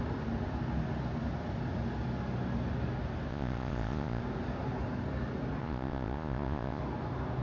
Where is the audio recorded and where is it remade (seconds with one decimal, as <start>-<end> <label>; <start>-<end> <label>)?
0.0-3.3 recorded; 3.3-4.2 remade; 4.2-5.6 recorded; 5.6-6.8 remade; 6.8-7.4 recorded

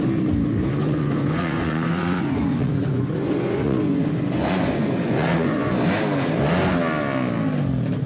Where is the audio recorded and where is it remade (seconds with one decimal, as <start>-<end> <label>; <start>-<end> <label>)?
0.0-0.8 recorded; 0.8-5.7 remade; 5.7-8.1 recorded

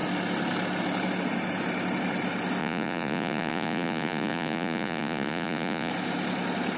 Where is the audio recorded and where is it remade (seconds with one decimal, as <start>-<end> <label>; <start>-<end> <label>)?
0.0-2.6 recorded; 2.6-5.9 remade; 5.9-6.8 recorded

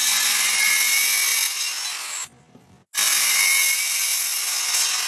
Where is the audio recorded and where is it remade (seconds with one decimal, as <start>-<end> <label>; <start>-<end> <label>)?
0.0-0.7 remade; 0.7-5.1 recorded

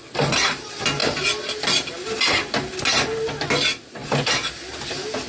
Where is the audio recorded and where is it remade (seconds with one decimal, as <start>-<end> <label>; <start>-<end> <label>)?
0.0-5.3 recorded